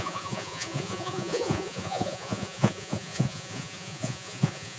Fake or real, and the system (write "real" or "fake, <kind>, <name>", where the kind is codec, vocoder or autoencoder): fake, vocoder, Vocos